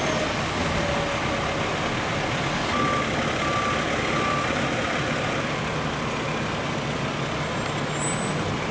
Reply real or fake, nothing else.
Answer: real